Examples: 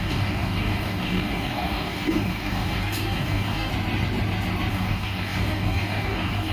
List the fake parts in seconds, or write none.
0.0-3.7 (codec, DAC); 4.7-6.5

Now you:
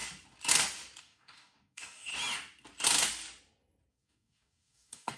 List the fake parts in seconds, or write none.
1.0-2.1 (codec, DAC); 3.9-5.2

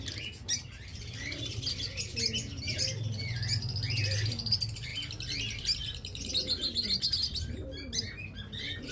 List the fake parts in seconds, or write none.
none

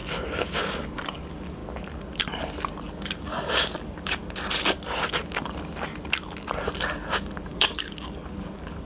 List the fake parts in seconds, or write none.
0.6-1.6 (codec, DAC); 2.9-4.2; 7.5-8.9

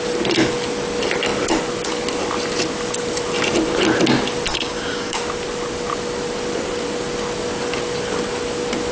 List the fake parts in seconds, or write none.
4.5-5.2 (codec, DAC)